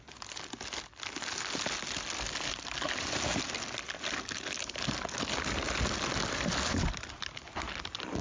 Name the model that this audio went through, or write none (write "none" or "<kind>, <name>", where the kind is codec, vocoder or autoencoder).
none